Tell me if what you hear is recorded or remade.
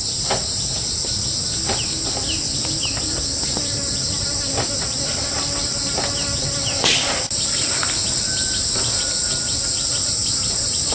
recorded